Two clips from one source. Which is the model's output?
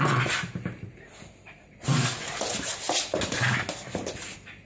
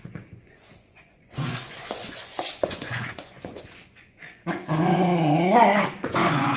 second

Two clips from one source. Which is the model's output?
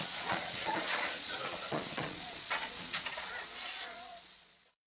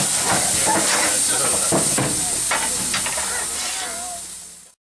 first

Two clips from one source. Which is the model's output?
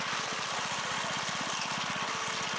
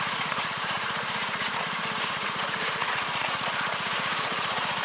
second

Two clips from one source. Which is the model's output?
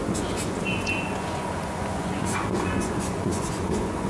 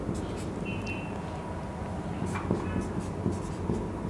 first